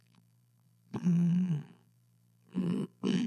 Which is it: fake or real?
fake